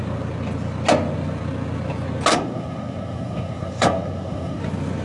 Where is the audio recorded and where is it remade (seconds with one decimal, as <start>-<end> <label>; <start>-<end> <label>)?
0.0-2.3 recorded; 2.3-4.6 remade; 4.6-5.0 recorded